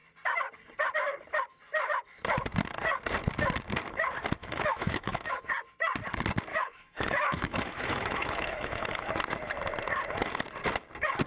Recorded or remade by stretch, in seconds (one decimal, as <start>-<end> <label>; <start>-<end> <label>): 0.0-4.4 recorded; 4.4-5.5 remade; 5.5-6.5 recorded; 6.5-9.1 remade; 9.1-11.3 recorded